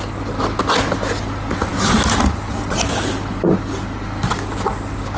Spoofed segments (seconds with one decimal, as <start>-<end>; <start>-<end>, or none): none